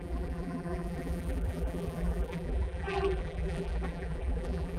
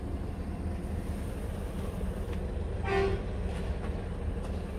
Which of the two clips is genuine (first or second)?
second